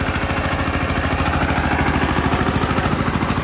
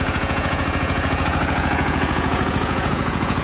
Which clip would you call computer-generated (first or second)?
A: second